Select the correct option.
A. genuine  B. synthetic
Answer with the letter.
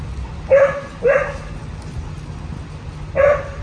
A